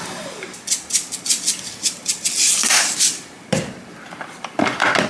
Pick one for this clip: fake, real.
real